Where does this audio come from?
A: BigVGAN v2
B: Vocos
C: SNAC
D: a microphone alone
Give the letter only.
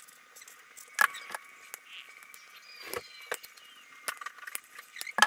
D